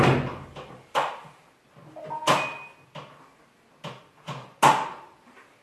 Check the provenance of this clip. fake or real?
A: real